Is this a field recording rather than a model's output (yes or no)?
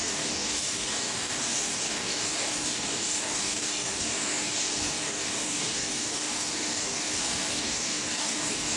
no